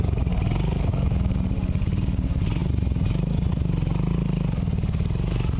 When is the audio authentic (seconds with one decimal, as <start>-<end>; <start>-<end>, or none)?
0.0-0.9; 1.4-5.6

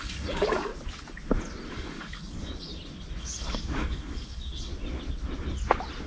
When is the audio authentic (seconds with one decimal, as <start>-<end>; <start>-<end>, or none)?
0.7-1.7; 2.7-3.2; 4.7-6.1

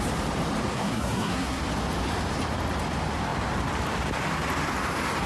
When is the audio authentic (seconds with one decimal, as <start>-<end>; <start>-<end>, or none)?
0.0-0.7; 1.6-5.3

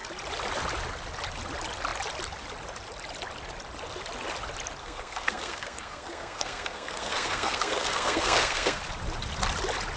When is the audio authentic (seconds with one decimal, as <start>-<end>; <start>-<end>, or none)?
0.0-4.8; 8.8-10.0